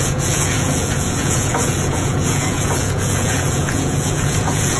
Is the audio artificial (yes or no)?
yes